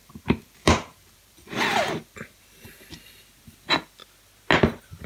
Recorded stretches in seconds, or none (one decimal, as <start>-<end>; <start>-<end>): 2.4-5.1